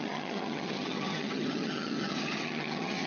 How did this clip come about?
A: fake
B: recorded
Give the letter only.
A